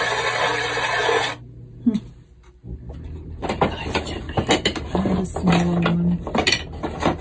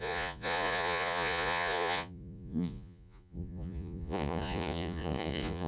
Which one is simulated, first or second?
second